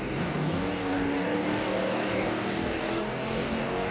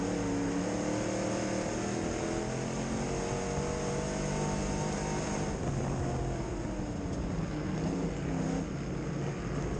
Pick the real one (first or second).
second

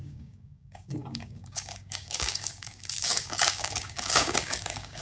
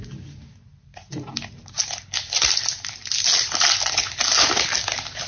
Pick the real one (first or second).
second